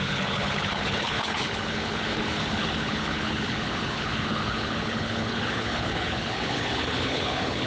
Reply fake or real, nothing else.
fake